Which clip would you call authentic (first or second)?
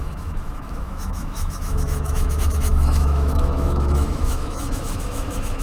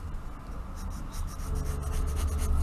second